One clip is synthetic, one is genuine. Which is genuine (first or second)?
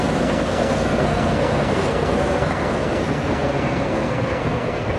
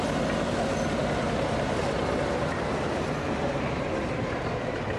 second